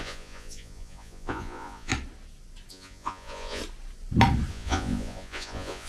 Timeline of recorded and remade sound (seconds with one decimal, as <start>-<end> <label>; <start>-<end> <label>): 0.0-1.9 remade; 1.9-2.7 recorded; 2.7-3.6 remade; 3.6-4.5 recorded; 4.5-5.9 remade